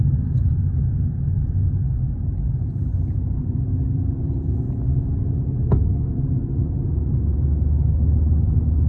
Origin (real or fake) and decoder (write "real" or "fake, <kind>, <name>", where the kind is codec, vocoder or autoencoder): real